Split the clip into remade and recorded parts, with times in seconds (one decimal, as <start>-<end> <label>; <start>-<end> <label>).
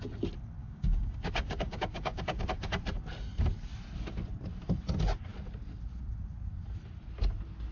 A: 0.0-0.6 recorded; 0.6-2.4 remade; 2.4-7.7 recorded